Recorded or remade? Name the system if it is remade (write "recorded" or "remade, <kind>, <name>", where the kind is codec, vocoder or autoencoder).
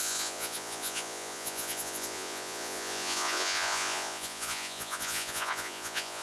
remade, vocoder, Vocos